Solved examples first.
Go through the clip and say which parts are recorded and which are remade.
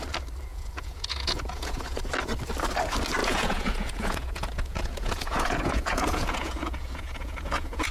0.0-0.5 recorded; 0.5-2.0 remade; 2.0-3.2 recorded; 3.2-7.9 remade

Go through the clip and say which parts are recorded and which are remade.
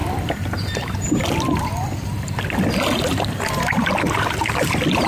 0.0-5.1 recorded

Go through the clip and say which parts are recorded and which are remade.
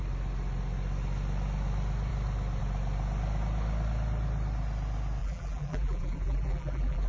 0.0-5.2 recorded; 5.2-7.1 remade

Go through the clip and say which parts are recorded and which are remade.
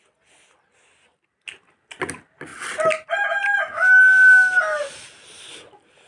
0.0-6.1 recorded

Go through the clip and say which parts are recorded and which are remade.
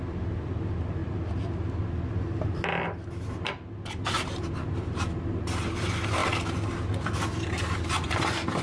0.0-8.6 recorded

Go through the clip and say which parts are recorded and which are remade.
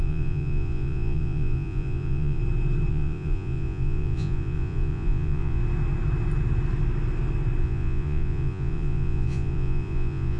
0.0-2.4 remade; 2.4-2.9 recorded; 2.9-5.6 remade; 5.6-7.6 recorded; 7.6-10.4 remade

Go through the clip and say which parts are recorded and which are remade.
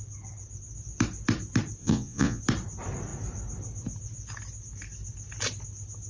0.0-1.8 recorded; 1.8-2.4 remade; 2.4-6.1 recorded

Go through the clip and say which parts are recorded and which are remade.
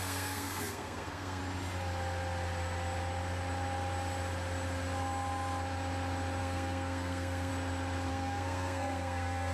0.0-1.4 remade; 1.4-6.4 recorded; 6.4-7.5 remade; 7.5-8.1 recorded; 8.1-9.5 remade